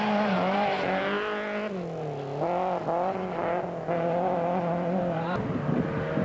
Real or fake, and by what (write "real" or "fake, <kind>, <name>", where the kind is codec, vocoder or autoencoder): real